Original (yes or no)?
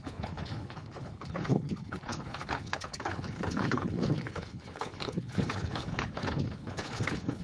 no